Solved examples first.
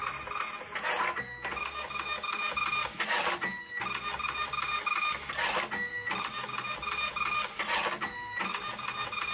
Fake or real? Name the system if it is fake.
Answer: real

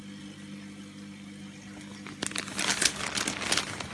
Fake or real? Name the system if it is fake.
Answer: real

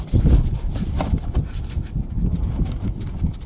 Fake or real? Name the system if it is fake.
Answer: real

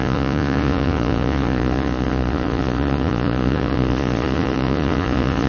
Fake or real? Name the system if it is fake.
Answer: fake, vocoder, Vocos